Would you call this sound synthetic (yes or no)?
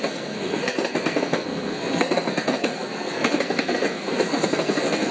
yes